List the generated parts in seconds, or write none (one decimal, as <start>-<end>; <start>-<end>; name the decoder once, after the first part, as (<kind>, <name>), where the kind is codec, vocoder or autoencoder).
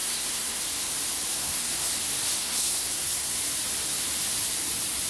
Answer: 0.0-0.6 (codec, SNAC); 1.3-1.9; 2.4-3.3